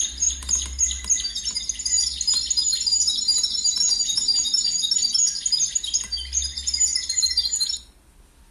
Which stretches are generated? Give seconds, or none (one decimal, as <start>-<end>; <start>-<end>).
none